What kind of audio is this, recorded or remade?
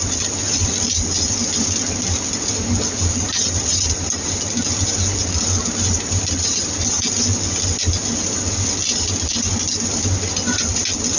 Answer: recorded